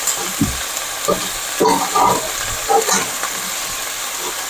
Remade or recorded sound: recorded